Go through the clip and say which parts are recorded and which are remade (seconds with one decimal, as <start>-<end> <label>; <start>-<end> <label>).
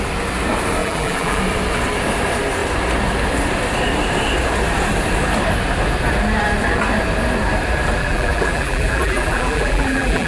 0.0-0.8 recorded; 0.8-1.4 remade; 1.4-8.0 recorded; 8.0-10.3 remade